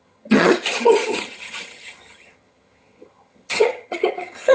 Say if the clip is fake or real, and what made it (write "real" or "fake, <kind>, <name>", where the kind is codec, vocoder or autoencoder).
fake, vocoder, HiFi-GAN